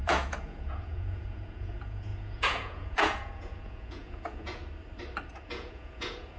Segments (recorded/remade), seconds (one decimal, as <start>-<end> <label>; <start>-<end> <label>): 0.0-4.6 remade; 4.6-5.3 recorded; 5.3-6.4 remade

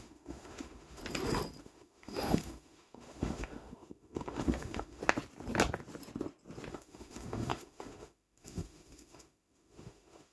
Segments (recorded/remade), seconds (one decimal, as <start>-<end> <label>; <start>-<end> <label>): 0.0-1.0 remade; 1.0-1.6 recorded; 1.6-5.0 remade; 5.0-6.7 recorded; 6.7-10.3 remade

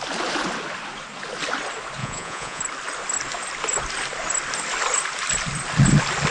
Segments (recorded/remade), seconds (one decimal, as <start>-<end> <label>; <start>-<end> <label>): 0.0-2.0 recorded; 2.0-2.6 remade; 2.6-6.3 recorded